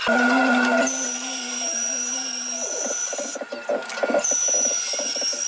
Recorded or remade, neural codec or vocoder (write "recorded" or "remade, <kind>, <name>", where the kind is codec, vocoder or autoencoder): recorded